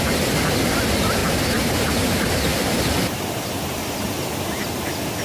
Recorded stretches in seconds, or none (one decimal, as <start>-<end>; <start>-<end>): 0.0-1.2; 4.3-5.2